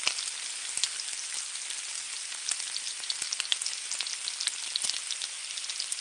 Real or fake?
real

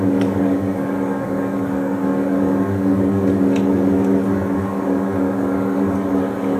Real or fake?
fake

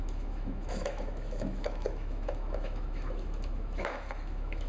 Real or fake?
fake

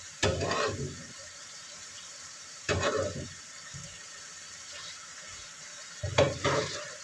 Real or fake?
fake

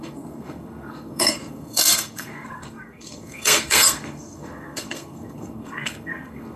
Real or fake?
fake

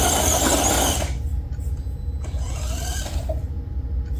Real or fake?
real